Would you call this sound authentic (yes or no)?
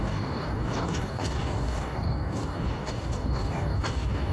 no